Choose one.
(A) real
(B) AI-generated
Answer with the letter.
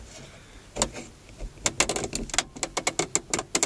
A